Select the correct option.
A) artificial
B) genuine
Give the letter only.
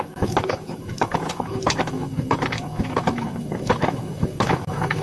A